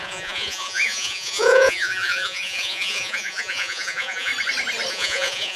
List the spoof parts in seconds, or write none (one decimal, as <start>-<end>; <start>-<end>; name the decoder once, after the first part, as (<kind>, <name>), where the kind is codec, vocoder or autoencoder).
0.0-4.3 (vocoder, Vocos); 4.9-5.6